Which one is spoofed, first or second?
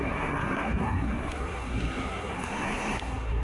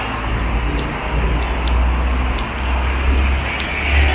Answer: first